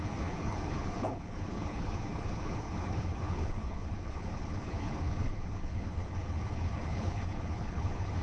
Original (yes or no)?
no